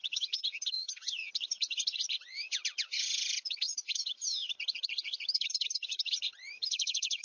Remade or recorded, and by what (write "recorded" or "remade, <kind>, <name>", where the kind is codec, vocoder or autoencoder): remade, vocoder, HiFi-GAN